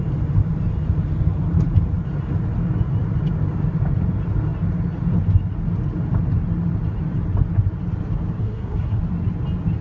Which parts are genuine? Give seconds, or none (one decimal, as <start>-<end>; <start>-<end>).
0.0-8.4; 9.0-9.8